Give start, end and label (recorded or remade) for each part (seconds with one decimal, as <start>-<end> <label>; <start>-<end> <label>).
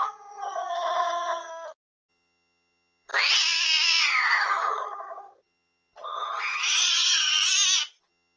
0.0-1.5 remade; 1.5-2.1 recorded; 2.1-3.1 remade; 3.1-4.0 recorded; 4.0-7.3 remade; 7.3-8.0 recorded; 8.0-8.4 remade